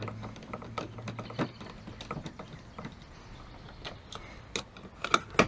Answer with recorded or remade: recorded